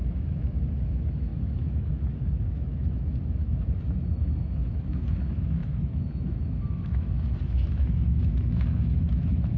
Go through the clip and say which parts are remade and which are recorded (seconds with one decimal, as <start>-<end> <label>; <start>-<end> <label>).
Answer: 0.0-9.6 remade